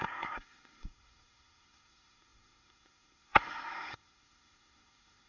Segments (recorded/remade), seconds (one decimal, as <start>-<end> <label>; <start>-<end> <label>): 0.0-5.3 remade

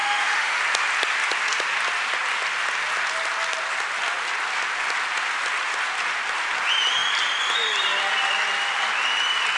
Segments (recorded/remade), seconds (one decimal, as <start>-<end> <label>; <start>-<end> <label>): 0.0-0.6 remade; 0.6-9.6 recorded

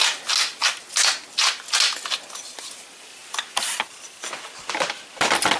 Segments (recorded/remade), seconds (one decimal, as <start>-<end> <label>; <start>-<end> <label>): 0.0-5.6 recorded

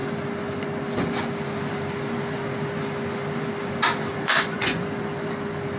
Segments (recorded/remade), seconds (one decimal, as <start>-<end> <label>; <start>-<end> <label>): 0.0-4.1 recorded; 4.1-4.8 remade; 4.8-5.8 recorded

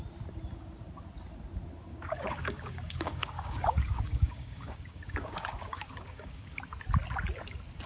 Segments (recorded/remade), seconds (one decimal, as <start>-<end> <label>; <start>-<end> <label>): 0.0-1.9 recorded; 1.9-6.6 remade; 6.6-7.9 recorded

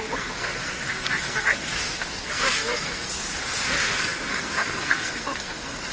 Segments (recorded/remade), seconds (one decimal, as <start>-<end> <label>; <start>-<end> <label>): 0.0-5.9 remade

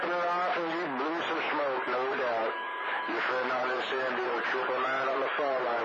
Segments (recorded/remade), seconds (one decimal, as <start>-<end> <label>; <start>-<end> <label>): 0.0-2.4 recorded; 2.4-5.8 remade

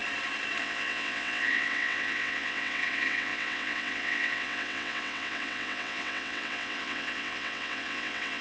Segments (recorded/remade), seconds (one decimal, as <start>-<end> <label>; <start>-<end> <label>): 0.0-0.6 recorded; 0.6-8.4 remade